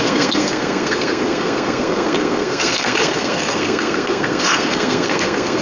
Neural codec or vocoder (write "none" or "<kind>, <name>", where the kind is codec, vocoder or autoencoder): codec, SNAC